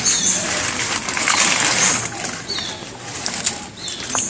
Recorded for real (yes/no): yes